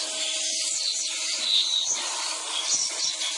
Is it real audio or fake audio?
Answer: real